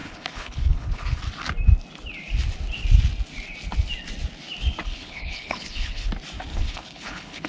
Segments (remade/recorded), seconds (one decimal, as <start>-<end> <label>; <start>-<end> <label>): 0.0-1.2 remade; 1.2-4.8 recorded; 4.8-6.1 remade; 6.1-6.5 recorded; 6.5-7.5 remade